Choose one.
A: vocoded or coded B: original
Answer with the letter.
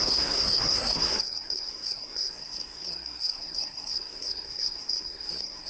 A